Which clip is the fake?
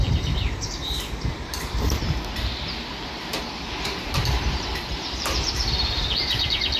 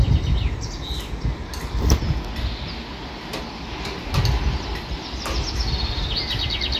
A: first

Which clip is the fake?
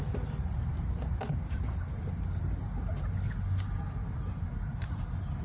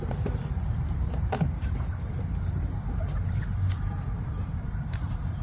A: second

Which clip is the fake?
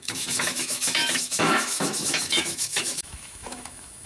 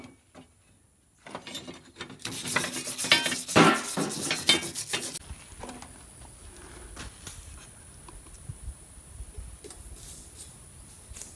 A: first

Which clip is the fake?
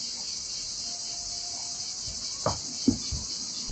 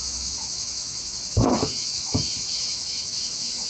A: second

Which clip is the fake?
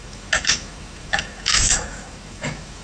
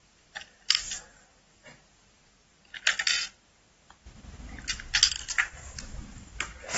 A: first